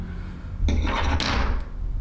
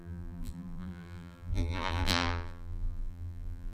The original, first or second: first